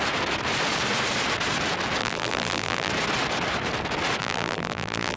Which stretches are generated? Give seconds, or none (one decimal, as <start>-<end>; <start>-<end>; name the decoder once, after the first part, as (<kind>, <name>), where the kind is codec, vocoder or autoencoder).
2.0-2.9 (vocoder, BigVGAN v2); 4.2-5.2